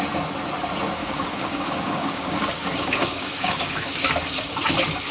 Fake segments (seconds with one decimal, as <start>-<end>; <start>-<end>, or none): 1.0-4.1